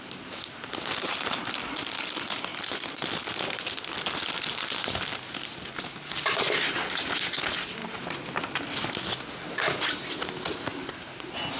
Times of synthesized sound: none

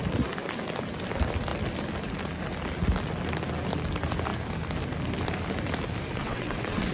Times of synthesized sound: 6.2-6.9 (vocoder, WaveNeXt)

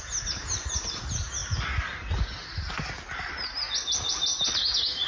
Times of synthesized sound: none